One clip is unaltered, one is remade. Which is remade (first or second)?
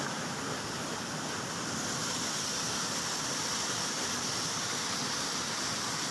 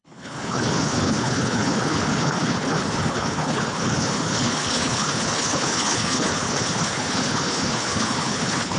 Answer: second